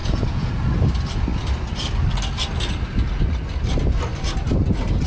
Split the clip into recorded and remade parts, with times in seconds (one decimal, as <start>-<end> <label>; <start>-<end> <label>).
0.0-0.5 remade; 0.5-5.1 recorded